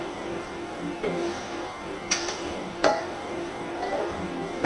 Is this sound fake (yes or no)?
yes